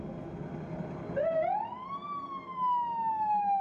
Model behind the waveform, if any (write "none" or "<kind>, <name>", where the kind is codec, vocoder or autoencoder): none